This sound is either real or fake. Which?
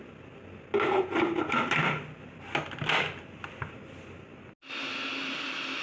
real